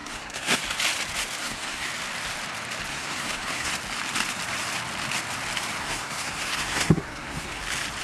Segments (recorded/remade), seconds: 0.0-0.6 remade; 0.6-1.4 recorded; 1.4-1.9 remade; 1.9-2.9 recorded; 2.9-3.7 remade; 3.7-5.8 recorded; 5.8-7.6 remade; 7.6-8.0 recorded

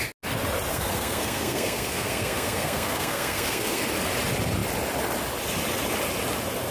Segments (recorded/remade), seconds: 0.0-0.7 recorded; 0.7-3.8 remade; 3.8-6.7 recorded

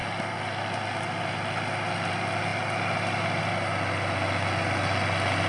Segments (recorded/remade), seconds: 0.0-5.5 recorded